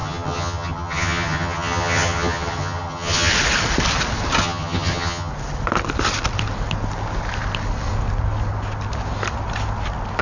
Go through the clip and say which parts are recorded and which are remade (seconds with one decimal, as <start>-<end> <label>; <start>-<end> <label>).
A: 0.0-3.3 remade; 3.3-4.4 recorded; 4.4-5.3 remade; 5.3-10.2 recorded